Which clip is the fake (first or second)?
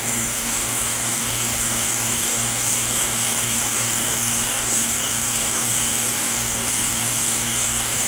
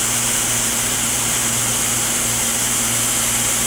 first